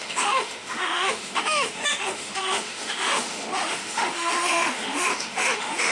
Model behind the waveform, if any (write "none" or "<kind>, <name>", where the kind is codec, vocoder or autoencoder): autoencoder, DAC-VAE